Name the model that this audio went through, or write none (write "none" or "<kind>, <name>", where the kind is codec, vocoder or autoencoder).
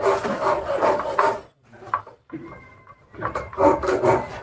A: none